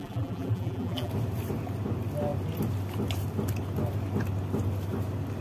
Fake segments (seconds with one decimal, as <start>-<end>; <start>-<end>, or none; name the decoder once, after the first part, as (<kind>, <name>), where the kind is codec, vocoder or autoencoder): 0.0-1.1 (vocoder, BigVGAN v2)